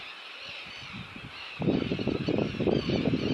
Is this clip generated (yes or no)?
no